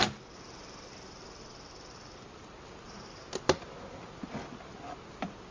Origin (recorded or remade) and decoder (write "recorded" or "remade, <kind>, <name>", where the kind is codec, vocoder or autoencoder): recorded